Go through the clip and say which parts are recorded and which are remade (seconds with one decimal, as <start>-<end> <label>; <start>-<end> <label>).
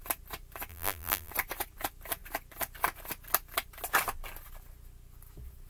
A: 0.0-0.7 recorded; 0.7-1.3 remade; 1.3-5.7 recorded